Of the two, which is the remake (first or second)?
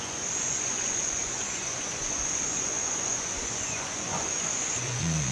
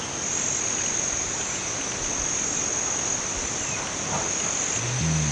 first